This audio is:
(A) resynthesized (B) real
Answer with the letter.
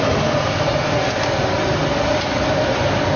B